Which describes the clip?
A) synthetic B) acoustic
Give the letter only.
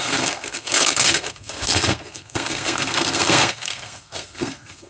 A